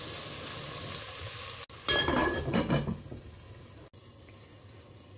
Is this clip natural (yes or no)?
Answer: yes